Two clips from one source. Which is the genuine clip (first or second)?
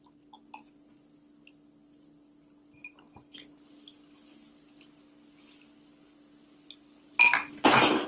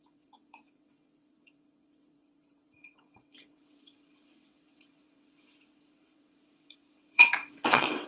first